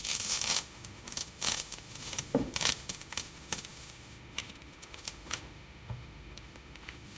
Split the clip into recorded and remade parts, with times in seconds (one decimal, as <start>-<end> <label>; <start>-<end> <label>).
0.0-7.2 remade